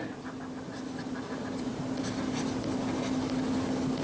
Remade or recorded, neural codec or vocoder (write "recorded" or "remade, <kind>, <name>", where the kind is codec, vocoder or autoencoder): recorded